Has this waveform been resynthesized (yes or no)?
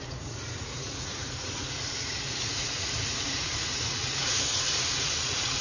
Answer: yes